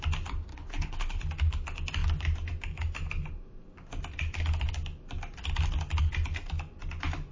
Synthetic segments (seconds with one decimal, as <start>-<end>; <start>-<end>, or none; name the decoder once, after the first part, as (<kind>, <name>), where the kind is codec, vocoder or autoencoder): 0.5-1.2 (codec, HILCodec)